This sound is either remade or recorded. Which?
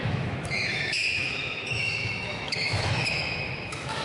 remade